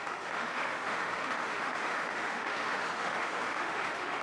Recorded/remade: remade